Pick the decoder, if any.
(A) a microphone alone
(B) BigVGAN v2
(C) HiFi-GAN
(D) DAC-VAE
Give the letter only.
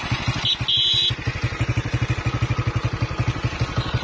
A